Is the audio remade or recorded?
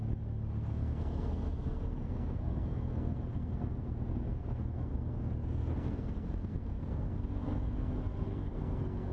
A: remade